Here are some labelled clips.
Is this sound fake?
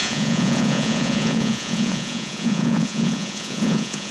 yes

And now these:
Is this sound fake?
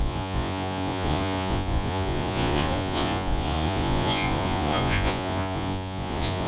yes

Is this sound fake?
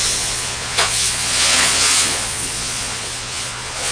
yes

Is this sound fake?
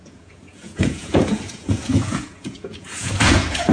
yes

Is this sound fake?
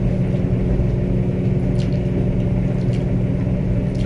no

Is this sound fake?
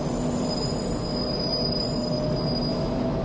no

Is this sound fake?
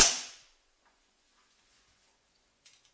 yes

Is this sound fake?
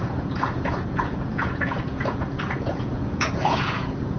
yes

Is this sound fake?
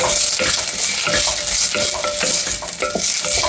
no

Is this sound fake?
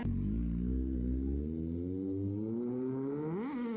no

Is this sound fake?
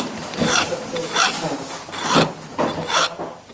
no